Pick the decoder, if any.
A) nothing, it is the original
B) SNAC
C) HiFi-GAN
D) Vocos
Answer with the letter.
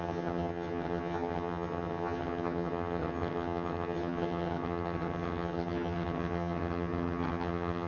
C